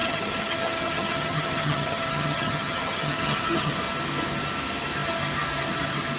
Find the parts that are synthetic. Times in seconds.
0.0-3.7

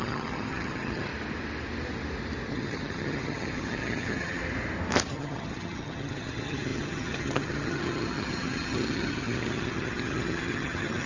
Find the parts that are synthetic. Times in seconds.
0.0-1.1; 2.5-4.4; 5.1-11.1

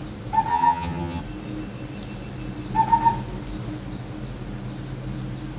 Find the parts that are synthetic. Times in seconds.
0.5-1.2

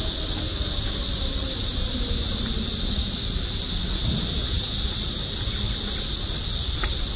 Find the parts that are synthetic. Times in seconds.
none